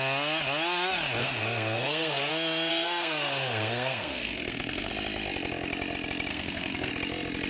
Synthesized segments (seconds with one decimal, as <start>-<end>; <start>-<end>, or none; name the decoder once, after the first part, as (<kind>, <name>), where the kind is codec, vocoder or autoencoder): 1.2-2.3 (codec, SNAC); 2.7-4.9; 6.3-6.9